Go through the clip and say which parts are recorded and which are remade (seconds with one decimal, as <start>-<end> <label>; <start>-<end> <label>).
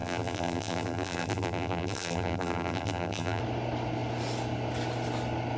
0.0-3.4 remade; 3.4-5.6 recorded